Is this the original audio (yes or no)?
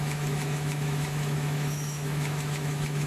no